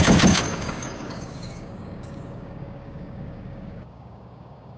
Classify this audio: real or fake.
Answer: fake